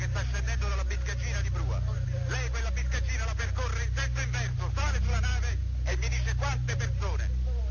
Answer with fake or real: real